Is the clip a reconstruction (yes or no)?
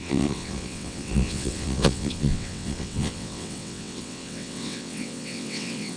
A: yes